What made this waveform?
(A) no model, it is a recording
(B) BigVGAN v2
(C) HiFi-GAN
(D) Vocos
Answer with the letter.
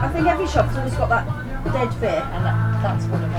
A